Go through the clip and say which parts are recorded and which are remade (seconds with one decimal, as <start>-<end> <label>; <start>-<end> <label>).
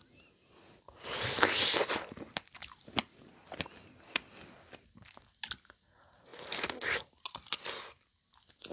0.0-8.7 recorded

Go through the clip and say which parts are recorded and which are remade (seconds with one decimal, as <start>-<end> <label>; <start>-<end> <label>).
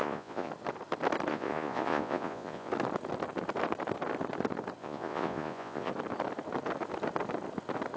0.0-0.5 remade; 0.5-1.3 recorded; 1.3-2.7 remade; 2.7-4.8 recorded; 4.8-5.9 remade; 5.9-8.0 recorded